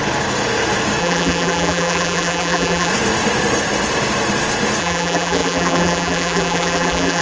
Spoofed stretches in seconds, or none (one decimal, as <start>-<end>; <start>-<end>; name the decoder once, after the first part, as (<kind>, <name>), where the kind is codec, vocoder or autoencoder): 1.0-2.9 (vocoder, BigVGAN v2); 4.8-7.2